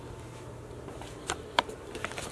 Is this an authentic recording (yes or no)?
no